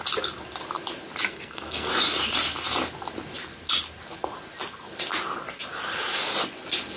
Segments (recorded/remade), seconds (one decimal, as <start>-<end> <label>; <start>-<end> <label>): 0.0-1.3 recorded; 1.3-1.9 remade; 1.9-7.0 recorded